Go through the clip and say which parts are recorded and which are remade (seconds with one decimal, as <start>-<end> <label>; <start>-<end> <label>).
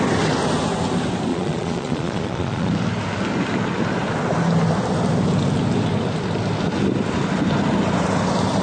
0.0-1.3 recorded; 1.3-2.7 remade; 2.7-8.6 recorded